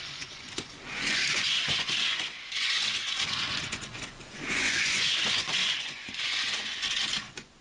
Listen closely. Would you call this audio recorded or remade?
remade